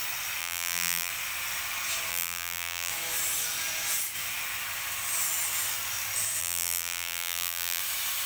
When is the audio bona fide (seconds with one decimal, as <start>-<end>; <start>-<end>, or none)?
0.0-0.4; 1.1-2.1; 2.9-6.4; 7.8-8.3